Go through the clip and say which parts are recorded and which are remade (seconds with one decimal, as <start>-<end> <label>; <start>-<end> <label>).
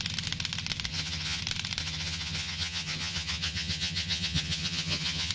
0.0-0.9 recorded; 0.9-1.4 remade; 1.4-1.8 recorded; 1.8-5.3 remade